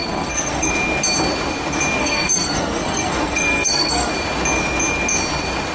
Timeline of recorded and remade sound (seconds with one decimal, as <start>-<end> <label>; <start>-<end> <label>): 0.0-0.7 remade; 0.7-2.0 recorded; 2.0-4.1 remade; 4.1-5.7 recorded